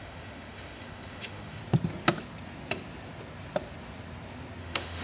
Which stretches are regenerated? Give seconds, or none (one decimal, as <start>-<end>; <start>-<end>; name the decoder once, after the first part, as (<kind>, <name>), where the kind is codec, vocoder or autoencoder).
0.0-1.6 (autoencoder, DAC-VAE); 4.6-5.0